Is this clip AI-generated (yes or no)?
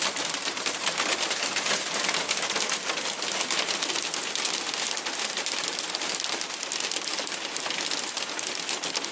no